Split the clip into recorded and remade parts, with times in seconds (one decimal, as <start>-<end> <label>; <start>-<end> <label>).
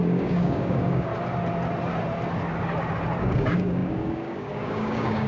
0.0-1.1 remade; 1.1-3.2 recorded; 3.2-5.3 remade